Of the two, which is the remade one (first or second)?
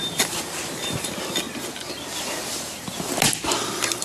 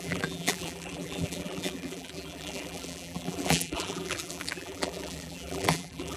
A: second